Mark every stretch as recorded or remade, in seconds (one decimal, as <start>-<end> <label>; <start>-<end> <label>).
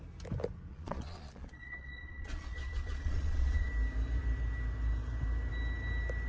0.0-0.7 recorded; 0.7-3.7 remade; 3.7-6.3 recorded